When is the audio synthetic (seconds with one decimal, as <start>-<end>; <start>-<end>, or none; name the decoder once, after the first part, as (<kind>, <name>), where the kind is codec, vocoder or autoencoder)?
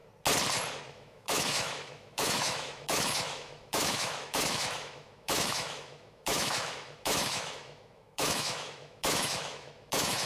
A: 0.9-10.3 (autoencoder, DAC-VAE)